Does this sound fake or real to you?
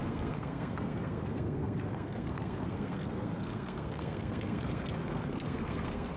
fake